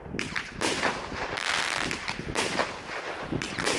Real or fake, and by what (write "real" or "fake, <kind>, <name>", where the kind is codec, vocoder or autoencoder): real